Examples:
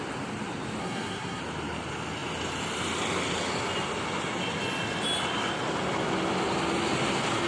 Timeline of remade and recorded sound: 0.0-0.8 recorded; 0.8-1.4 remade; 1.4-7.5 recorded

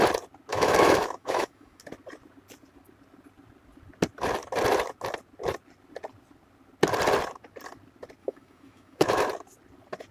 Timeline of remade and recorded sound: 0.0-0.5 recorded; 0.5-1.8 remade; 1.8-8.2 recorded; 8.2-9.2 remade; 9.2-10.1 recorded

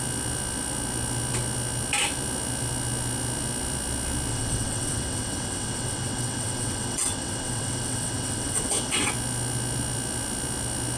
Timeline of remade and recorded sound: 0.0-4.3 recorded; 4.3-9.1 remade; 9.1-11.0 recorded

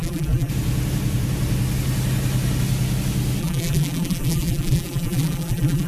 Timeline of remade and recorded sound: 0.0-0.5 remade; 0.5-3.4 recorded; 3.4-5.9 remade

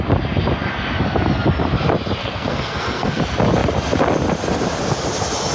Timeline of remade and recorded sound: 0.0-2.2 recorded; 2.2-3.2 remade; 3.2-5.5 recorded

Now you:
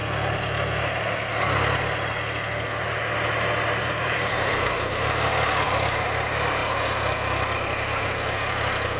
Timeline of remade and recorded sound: 0.0-3.8 recorded; 3.8-6.6 remade; 6.6-9.0 recorded